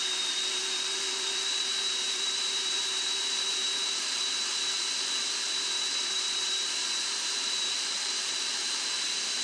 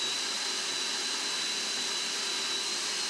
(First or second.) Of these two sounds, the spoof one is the first